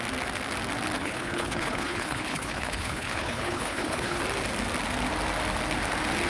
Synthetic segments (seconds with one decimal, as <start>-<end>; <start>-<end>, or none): 1.0-4.2